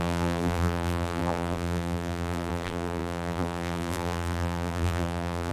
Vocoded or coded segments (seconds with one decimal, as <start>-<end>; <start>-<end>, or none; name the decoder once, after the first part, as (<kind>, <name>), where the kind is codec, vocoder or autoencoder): 0.0-5.5 (vocoder, BigVGAN v2)